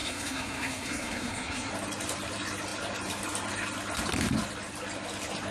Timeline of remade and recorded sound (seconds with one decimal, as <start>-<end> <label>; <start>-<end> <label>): 0.0-1.7 remade; 1.7-5.5 recorded

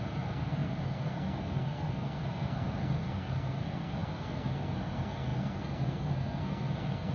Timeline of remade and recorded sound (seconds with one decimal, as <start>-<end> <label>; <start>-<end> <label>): 0.0-7.1 remade

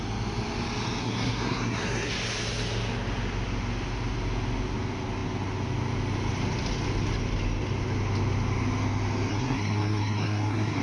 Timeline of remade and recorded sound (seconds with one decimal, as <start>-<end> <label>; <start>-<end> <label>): 0.0-1.0 recorded; 1.0-2.1 remade; 2.1-9.3 recorded; 9.3-10.8 remade

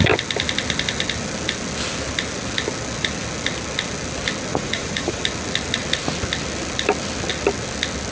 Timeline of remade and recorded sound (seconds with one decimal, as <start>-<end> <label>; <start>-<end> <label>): 0.0-4.5 recorded; 4.5-5.2 remade; 5.2-8.1 recorded

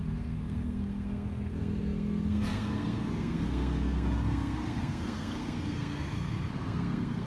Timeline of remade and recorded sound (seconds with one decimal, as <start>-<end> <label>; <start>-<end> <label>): 0.0-7.3 remade

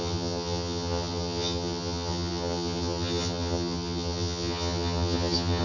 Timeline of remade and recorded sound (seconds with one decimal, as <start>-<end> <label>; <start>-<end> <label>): 0.0-5.6 remade

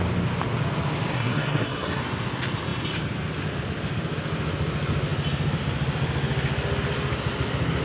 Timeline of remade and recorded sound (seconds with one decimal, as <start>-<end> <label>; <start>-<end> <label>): 0.0-1.1 recorded; 1.1-2.0 remade; 2.0-7.8 recorded